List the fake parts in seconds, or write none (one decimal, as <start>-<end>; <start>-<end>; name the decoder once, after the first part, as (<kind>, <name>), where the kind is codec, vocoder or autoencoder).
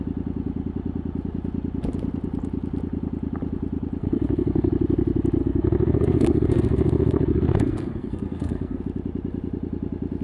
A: 4.0-4.7 (codec, SNAC); 5.4-8.8